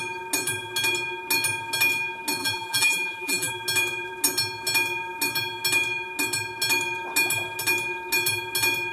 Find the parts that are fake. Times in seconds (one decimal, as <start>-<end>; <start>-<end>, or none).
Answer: 2.4-3.5